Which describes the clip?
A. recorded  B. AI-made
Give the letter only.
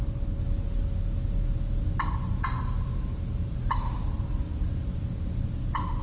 A